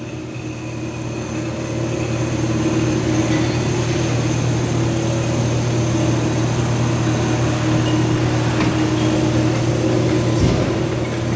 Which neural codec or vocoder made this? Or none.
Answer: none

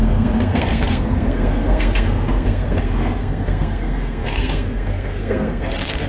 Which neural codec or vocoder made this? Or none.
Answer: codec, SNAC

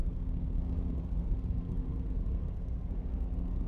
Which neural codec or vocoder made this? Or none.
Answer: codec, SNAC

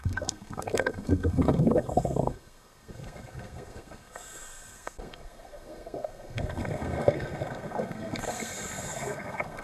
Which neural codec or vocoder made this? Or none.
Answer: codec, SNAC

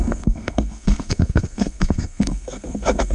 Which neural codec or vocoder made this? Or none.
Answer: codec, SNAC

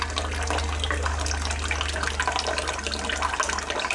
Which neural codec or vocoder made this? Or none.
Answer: none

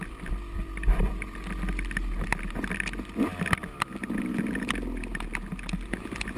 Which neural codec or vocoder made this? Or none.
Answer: none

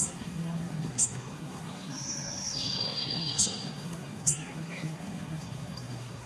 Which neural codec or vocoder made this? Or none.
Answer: codec, SNAC